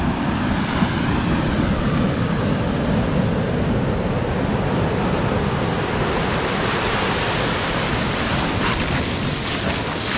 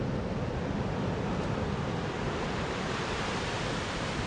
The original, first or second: first